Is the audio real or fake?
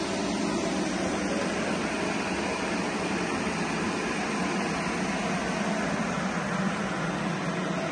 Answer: real